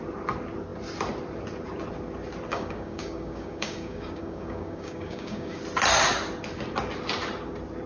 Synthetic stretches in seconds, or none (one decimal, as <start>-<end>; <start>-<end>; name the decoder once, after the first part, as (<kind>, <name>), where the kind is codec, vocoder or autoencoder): 2.5-5.6 (codec, DAC)